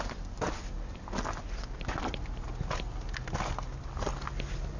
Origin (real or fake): real